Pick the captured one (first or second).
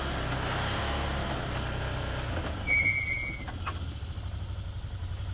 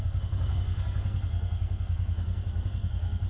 first